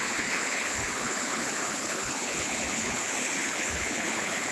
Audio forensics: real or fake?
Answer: fake